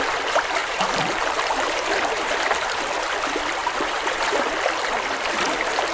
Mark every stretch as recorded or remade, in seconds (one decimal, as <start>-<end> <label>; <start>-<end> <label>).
0.0-0.6 recorded; 0.6-2.4 remade; 2.4-3.6 recorded; 3.6-4.5 remade; 4.5-5.9 recorded